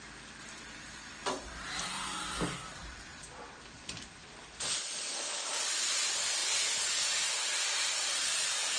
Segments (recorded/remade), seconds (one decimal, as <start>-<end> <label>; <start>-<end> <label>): 0.0-6.4 remade; 6.4-7.1 recorded; 7.1-8.8 remade